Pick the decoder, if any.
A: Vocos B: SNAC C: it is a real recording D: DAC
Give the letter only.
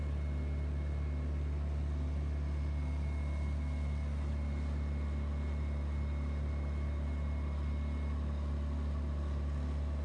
C